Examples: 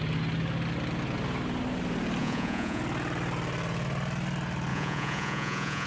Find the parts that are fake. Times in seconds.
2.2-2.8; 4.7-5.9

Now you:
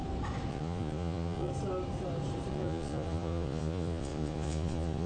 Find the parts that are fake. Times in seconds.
0.5-1.5; 2.5-5.1

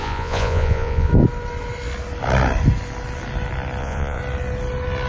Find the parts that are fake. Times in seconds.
0.0-1.1; 3.8-4.2